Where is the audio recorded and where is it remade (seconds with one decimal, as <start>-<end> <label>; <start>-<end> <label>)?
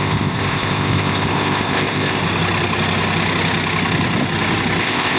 0.0-2.2 remade; 2.2-4.8 recorded; 4.8-5.2 remade